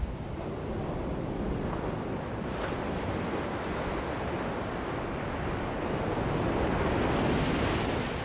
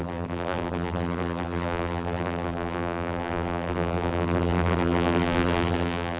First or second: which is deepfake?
second